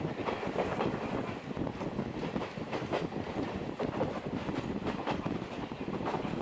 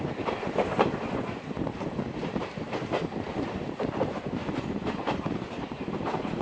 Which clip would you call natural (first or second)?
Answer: first